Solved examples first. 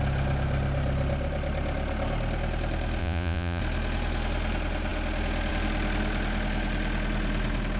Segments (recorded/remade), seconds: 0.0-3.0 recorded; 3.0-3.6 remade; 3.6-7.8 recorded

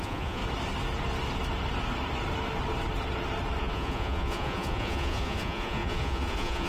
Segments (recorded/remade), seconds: 0.0-0.4 remade; 0.4-3.6 recorded; 3.6-6.7 remade

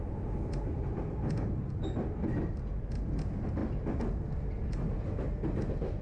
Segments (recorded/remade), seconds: 0.0-6.0 recorded

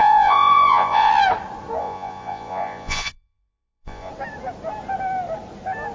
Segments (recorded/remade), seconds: 0.0-1.1 remade; 1.1-1.8 recorded; 1.8-4.1 remade; 4.1-5.9 recorded

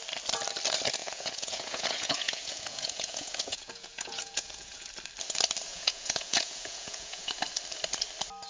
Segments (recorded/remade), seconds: 0.0-1.0 recorded; 1.0-4.9 remade; 4.9-5.7 recorded; 5.7-7.4 remade; 7.4-8.5 recorded

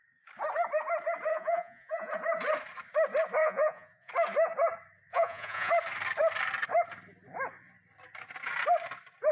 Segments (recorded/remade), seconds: 0.0-1.3 recorded; 1.3-2.1 remade; 2.1-3.4 recorded; 3.4-4.1 remade; 4.1-5.1 recorded; 5.1-5.7 remade; 5.7-9.3 recorded

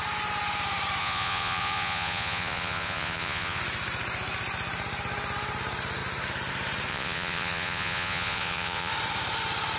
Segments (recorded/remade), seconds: 0.0-1.0 recorded; 1.0-3.6 remade; 3.6-6.9 recorded; 6.9-8.9 remade; 8.9-9.8 recorded

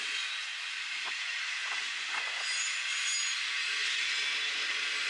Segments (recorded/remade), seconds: 0.0-1.6 recorded; 1.6-2.6 remade; 2.6-5.1 recorded